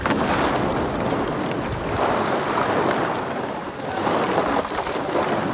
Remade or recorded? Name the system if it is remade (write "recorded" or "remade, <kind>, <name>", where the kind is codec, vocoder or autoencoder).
recorded